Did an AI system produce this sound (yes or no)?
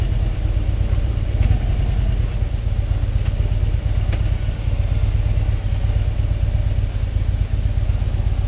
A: no